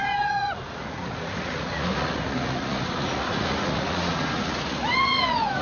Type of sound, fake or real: fake